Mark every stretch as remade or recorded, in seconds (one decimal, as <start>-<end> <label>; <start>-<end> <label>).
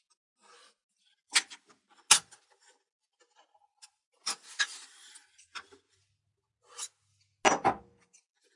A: 0.0-3.9 recorded; 3.9-5.1 remade; 5.1-8.6 recorded